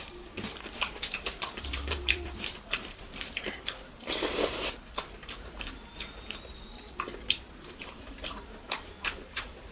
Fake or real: fake